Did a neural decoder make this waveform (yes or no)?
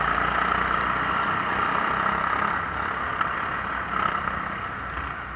no